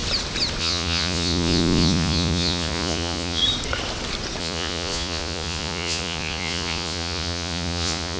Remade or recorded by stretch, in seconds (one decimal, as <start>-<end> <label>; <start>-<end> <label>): 0.0-0.6 recorded; 0.6-3.4 remade; 3.4-4.4 recorded; 4.4-8.2 remade